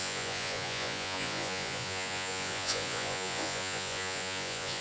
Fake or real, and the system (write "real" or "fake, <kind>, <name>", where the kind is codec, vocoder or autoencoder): fake, vocoder, Vocos